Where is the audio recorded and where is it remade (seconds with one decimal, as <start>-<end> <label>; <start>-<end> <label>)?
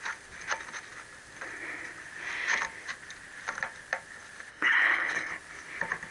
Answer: 0.0-4.5 recorded; 4.5-5.3 remade; 5.3-6.1 recorded